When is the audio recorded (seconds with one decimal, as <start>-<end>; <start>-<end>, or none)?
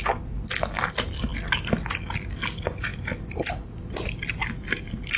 0.0-5.2